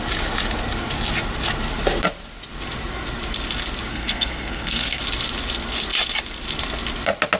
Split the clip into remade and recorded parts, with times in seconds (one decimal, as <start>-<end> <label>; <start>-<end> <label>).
0.0-3.9 recorded; 3.9-5.0 remade; 5.0-7.4 recorded